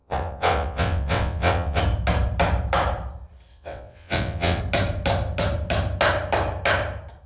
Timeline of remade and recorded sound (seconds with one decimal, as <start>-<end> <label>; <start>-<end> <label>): 0.0-1.8 remade; 1.8-3.5 recorded; 3.5-4.6 remade; 4.6-7.3 recorded